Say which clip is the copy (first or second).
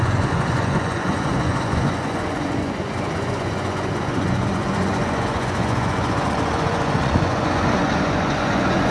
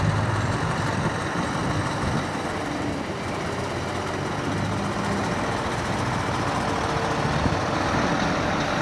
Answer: first